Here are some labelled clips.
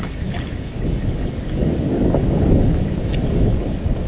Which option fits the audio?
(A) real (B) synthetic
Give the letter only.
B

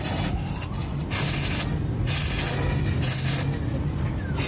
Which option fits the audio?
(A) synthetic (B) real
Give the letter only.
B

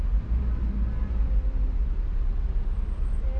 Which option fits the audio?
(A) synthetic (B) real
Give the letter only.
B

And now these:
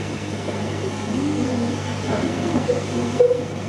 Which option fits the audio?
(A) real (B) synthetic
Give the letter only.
B